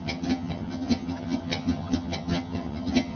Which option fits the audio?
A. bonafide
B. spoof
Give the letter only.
B